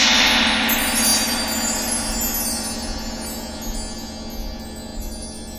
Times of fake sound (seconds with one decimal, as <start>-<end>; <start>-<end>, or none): none